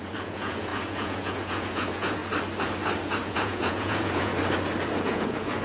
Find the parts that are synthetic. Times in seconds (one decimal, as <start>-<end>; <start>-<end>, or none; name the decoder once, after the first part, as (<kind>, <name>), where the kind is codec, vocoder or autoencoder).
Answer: 0.0-2.2 (vocoder, Vocos); 3.2-4.3; 5.0-5.6